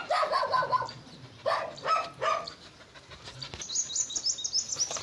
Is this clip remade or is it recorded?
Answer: recorded